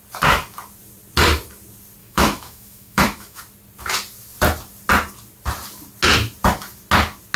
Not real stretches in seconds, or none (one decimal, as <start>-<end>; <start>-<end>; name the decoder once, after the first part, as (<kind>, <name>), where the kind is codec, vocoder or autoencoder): 2.0-3.4 (autoencoder, DAC-VAE)